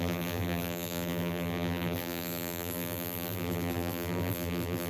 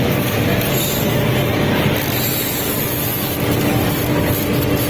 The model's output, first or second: first